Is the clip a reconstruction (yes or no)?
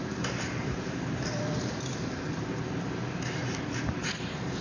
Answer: yes